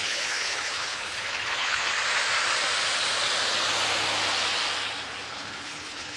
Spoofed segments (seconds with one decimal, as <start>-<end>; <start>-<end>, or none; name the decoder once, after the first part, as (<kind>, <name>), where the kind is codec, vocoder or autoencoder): 0.0-1.9 (codec, HILCodec); 5.3-6.2